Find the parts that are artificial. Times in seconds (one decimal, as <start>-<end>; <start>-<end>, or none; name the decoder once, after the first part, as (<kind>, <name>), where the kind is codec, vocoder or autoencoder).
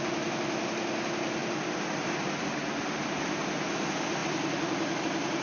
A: none